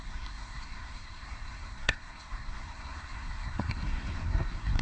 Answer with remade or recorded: remade